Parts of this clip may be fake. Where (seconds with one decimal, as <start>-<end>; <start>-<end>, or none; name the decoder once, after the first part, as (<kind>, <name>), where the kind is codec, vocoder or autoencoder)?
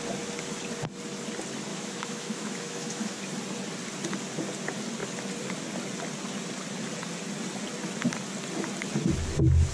1.7-3.2 (autoencoder, DAC-VAE)